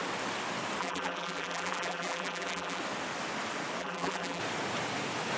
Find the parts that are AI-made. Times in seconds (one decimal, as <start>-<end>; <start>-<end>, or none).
0.8-2.8; 3.8-4.4